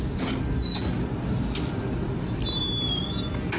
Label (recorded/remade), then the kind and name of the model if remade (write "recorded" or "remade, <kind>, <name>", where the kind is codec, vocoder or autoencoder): recorded